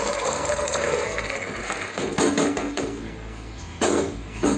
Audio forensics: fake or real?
fake